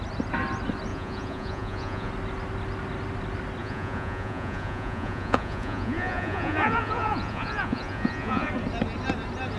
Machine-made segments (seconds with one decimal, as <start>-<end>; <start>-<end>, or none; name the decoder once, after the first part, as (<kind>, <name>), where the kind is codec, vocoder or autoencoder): 0.9-2.1 (vocoder, Vocos); 3.6-8.5